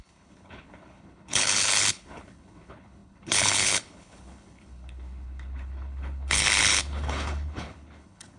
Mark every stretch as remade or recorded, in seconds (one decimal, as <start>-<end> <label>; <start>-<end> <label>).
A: 0.0-8.4 remade